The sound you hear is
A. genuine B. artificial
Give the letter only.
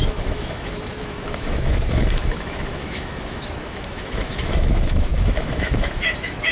B